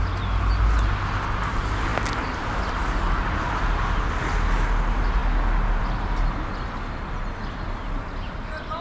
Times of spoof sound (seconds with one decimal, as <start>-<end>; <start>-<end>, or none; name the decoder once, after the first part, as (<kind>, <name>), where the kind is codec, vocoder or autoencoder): none